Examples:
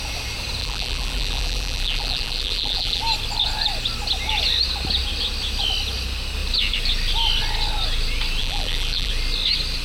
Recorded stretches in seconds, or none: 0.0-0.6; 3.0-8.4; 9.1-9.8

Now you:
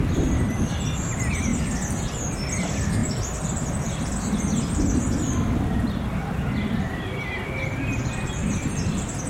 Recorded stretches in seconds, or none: 0.0-9.3

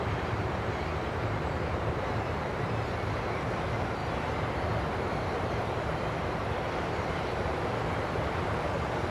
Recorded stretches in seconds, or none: 4.0-5.2

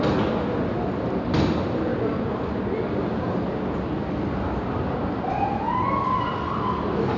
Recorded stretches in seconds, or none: 0.0-7.2